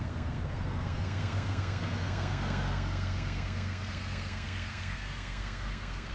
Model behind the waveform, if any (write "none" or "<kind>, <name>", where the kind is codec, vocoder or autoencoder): codec, SNAC